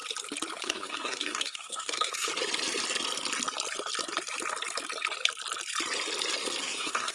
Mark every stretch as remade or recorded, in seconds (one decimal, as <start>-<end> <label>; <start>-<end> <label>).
0.0-0.6 recorded; 0.6-2.3 remade; 2.3-6.6 recorded; 6.6-7.1 remade